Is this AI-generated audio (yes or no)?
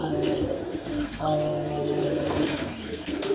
yes